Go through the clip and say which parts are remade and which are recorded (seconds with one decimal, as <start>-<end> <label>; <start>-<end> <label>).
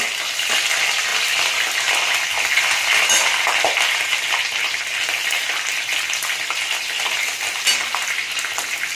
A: 0.0-8.9 recorded